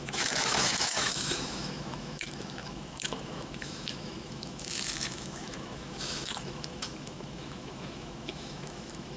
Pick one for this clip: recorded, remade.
remade